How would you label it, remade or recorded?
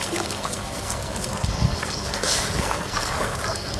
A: remade